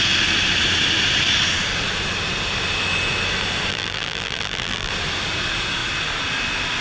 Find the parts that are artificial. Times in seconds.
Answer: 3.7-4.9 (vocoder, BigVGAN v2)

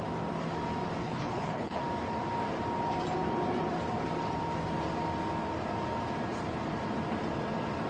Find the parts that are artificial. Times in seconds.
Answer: 1.0-1.8 (codec, HILCodec)

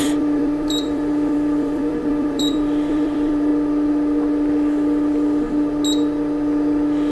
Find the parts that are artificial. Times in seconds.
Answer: 0.0-3.5 (vocoder, BigVGAN v2)

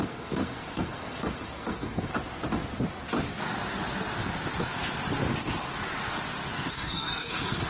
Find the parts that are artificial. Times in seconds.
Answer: 0.0-2.1 (codec, SNAC); 6.7-7.7

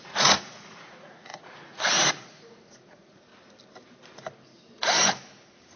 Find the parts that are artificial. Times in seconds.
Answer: 0.0-3.3 (vocoder, Vocos)

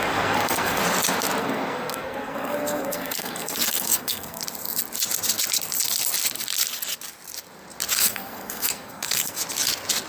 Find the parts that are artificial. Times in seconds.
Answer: 0.0-0.8 (codec, SNAC); 1.4-4.4; 8.0-9.4